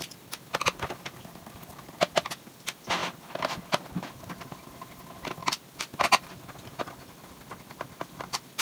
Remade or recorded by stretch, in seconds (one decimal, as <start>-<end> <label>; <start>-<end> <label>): 0.0-8.6 recorded